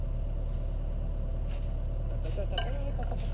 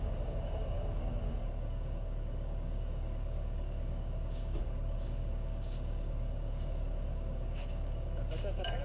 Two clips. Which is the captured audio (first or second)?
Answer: first